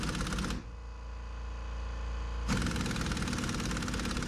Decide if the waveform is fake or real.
real